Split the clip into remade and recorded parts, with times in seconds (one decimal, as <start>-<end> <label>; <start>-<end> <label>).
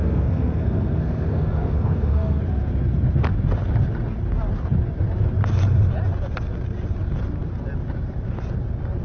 0.0-2.4 remade; 2.4-9.0 recorded